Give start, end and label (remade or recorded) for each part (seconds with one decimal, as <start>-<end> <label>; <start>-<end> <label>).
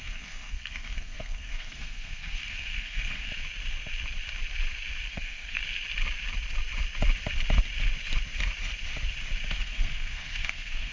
0.0-3.3 remade; 3.3-5.1 recorded; 5.1-5.6 remade; 5.6-9.5 recorded; 9.5-10.9 remade